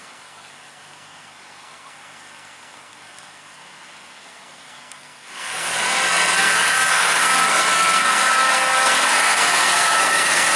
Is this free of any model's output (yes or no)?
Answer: no